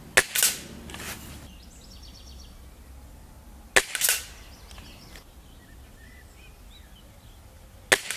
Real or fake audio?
real